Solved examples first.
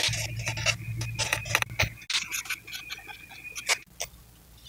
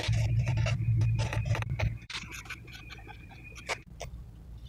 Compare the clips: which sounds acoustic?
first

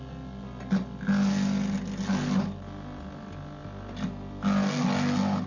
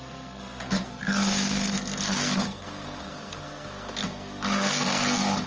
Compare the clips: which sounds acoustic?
first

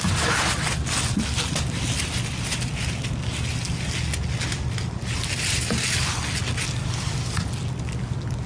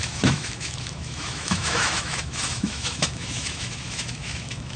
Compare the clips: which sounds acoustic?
first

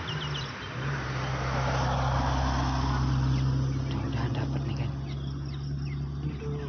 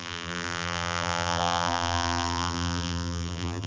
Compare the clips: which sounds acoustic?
first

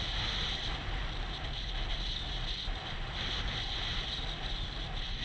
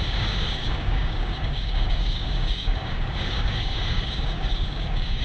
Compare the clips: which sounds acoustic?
first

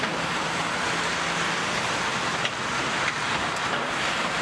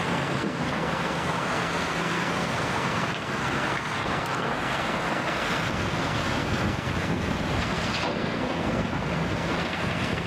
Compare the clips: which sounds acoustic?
first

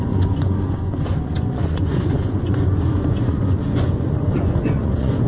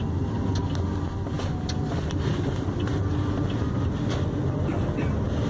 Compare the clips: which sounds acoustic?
second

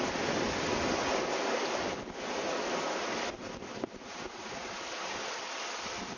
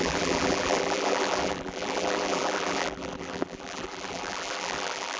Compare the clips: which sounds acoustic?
first